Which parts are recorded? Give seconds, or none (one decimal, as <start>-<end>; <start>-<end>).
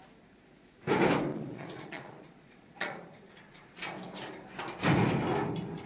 0.0-1.3; 3.8-5.9